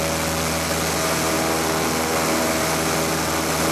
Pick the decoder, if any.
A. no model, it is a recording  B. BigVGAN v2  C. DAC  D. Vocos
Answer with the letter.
A